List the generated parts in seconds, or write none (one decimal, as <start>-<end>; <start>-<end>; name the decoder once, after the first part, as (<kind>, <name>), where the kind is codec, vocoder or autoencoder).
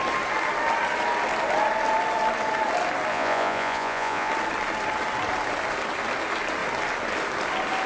3.1-4.3 (vocoder, Vocos)